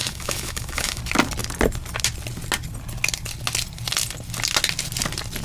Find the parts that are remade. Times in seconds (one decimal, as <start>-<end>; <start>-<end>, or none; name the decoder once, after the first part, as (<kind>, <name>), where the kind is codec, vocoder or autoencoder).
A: 0.0-1.0 (autoencoder, DAC-VAE)